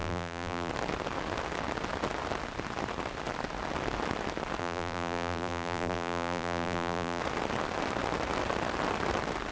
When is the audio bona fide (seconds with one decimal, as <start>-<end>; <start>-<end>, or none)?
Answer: 0.7-4.6; 7.2-9.5